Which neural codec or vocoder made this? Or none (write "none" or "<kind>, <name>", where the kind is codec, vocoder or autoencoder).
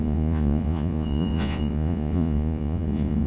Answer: vocoder, Vocos